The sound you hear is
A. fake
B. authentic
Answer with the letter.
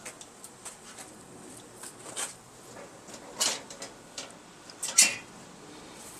B